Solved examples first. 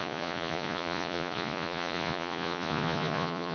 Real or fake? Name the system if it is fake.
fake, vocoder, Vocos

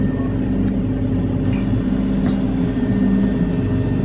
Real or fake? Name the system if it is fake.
real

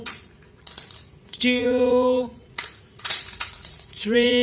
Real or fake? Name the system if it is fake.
fake, vocoder, Vocos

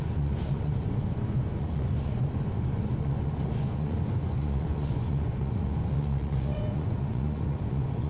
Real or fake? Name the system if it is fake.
fake, vocoder, Vocos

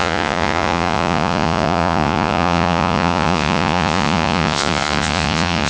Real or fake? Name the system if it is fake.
fake, vocoder, Vocos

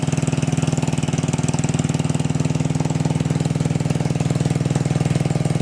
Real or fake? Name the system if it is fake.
real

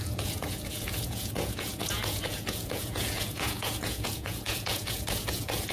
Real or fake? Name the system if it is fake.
fake, vocoder, Vocos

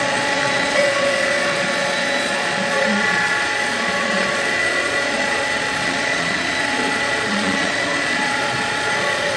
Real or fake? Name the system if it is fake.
fake, vocoder, Vocos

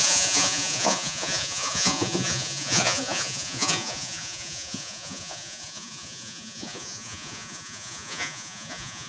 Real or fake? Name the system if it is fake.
fake, vocoder, Vocos